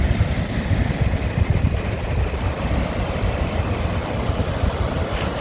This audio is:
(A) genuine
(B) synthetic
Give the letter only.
A